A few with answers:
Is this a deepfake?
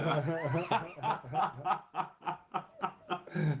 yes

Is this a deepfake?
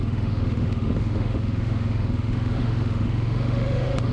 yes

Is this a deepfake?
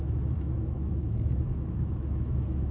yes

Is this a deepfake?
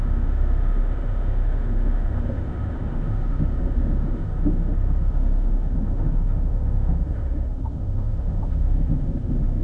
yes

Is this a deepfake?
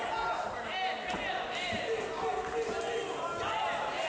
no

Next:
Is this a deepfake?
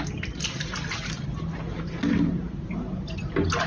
no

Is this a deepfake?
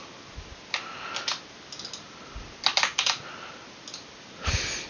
no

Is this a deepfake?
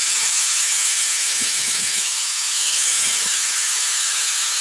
yes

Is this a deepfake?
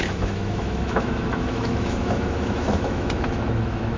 yes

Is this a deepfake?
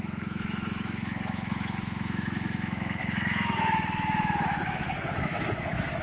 yes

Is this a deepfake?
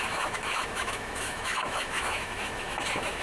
yes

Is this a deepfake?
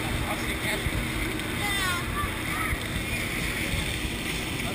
no